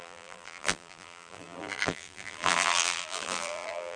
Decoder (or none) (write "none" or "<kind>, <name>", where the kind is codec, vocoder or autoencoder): vocoder, BigVGAN v2